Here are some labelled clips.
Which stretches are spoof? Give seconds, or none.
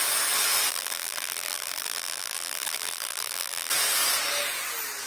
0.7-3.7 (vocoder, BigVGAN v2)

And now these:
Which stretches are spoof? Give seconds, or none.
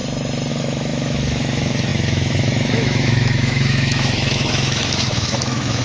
0.5-5.8 (autoencoder, DAC-VAE)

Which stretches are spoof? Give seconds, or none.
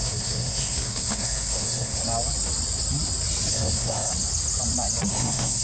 0.0-2.0 (codec, SNAC); 3.5-4.1; 5.1-5.6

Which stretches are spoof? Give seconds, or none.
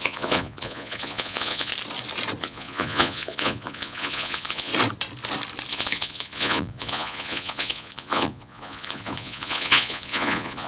0.0-1.7 (vocoder, Vocos); 2.4-4.7; 5.7-10.7